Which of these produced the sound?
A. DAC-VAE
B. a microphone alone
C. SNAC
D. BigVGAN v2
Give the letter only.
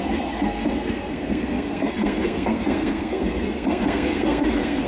C